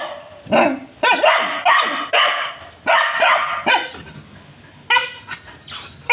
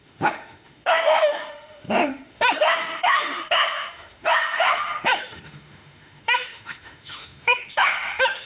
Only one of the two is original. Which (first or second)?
first